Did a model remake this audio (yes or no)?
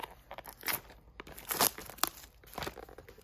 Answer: no